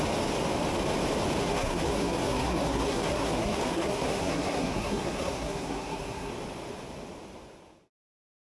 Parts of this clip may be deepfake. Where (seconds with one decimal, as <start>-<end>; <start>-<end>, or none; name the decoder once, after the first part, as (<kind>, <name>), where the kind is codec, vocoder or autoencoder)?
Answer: 1.4-6.3 (codec, SNAC)